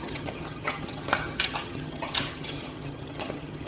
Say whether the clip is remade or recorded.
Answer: remade